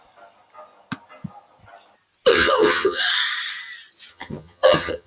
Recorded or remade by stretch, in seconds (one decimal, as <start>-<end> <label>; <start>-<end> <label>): 0.0-2.3 recorded; 2.3-3.0 remade; 3.0-4.1 recorded; 4.1-5.1 remade